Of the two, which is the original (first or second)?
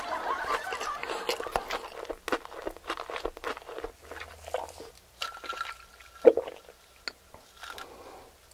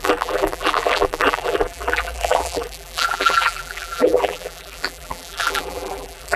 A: first